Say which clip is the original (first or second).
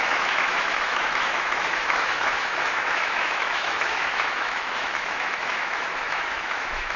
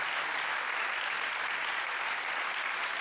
second